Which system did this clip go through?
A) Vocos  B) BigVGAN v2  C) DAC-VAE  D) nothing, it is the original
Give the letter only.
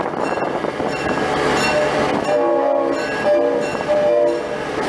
D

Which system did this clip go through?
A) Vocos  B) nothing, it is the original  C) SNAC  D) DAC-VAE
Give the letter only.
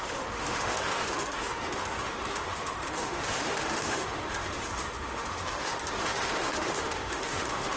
D